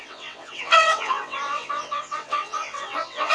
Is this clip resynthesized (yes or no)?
yes